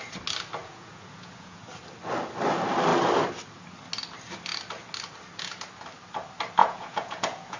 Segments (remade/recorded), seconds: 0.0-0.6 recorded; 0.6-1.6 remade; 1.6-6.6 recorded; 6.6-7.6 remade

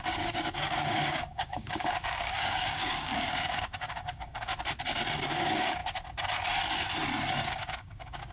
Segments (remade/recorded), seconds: 0.0-4.5 remade; 4.5-5.2 recorded; 5.2-5.8 remade; 5.8-7.3 recorded; 7.3-8.3 remade

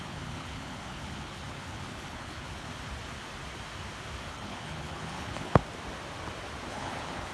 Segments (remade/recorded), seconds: 0.0-2.7 remade; 2.7-4.3 recorded; 4.3-5.6 remade; 5.6-6.7 recorded; 6.7-7.3 remade